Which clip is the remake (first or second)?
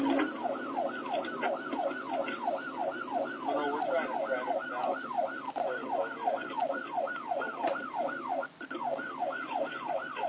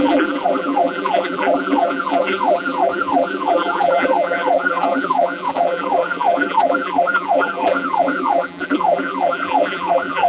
second